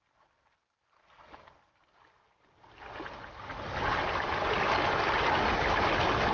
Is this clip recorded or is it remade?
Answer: recorded